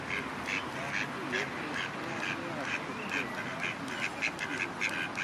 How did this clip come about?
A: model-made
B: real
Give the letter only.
B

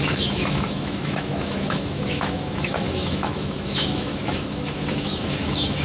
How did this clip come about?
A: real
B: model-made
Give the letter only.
B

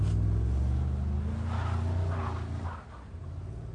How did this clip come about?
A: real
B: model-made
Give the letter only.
A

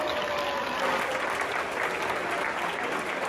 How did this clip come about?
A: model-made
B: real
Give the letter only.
B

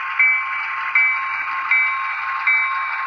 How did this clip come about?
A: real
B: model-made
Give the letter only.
A